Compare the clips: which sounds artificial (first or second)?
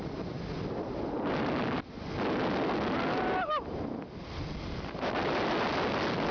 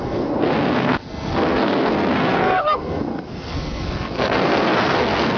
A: second